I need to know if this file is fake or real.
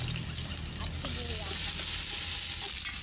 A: real